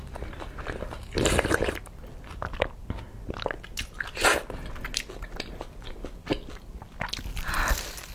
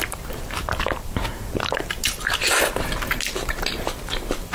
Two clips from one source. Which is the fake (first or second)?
second